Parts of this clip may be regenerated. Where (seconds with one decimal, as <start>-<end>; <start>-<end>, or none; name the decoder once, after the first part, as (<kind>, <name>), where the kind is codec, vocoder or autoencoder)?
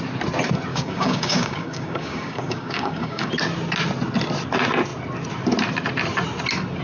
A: 0.7-3.3 (codec, DAC)